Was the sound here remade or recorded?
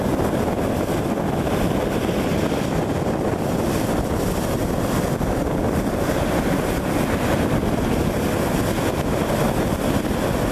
recorded